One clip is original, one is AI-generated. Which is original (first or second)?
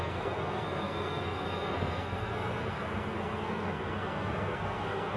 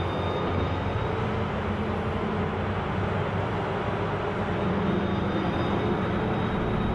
second